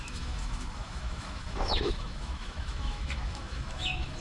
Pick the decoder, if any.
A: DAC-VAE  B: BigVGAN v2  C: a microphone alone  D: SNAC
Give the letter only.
A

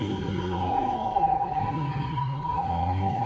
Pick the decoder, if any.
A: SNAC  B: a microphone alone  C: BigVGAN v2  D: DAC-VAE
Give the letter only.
A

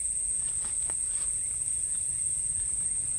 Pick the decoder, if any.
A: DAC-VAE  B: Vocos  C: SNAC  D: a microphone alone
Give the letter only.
B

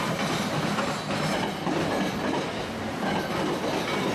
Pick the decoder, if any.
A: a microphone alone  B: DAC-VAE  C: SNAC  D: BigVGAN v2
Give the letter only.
A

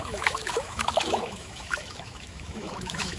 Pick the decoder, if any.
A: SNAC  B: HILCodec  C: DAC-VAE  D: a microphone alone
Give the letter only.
C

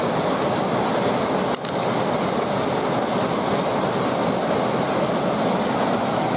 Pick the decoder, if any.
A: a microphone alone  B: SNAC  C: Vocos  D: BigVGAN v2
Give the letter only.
A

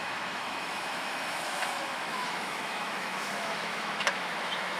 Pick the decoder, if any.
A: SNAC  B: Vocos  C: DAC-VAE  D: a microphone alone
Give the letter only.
C